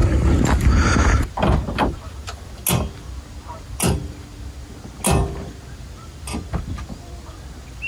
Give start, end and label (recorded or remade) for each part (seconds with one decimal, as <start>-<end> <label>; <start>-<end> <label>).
0.0-7.9 recorded